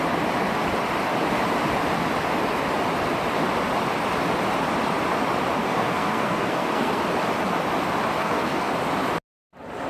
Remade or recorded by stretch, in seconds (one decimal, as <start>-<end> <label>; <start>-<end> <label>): 0.0-5.6 recorded; 5.6-7.0 remade; 7.0-8.2 recorded; 8.2-8.7 remade; 8.7-9.9 recorded